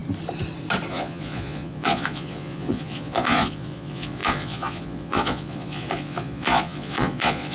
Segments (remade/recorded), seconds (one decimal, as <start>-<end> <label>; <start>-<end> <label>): 0.0-0.9 recorded; 0.9-7.5 remade